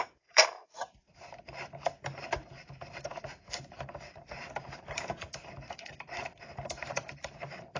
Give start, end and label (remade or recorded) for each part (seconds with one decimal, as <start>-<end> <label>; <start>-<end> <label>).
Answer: 0.0-7.8 remade